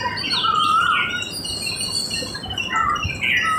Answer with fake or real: real